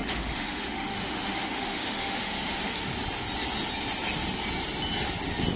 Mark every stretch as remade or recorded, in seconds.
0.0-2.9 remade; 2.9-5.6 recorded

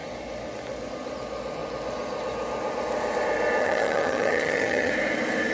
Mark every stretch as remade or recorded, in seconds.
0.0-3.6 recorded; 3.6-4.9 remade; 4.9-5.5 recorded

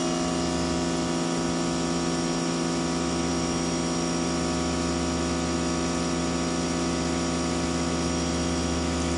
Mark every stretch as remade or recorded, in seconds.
0.0-9.2 recorded